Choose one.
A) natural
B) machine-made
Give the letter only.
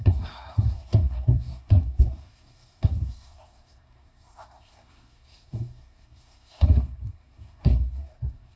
B